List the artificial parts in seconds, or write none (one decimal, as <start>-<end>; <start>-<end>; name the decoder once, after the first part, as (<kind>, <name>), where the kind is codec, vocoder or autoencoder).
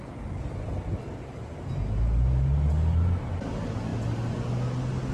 none